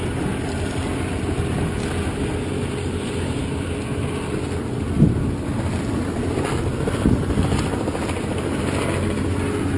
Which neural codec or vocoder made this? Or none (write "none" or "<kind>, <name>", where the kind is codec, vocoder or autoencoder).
none